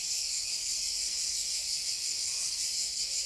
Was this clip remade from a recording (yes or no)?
yes